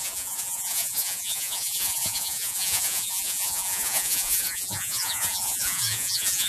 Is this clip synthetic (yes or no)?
yes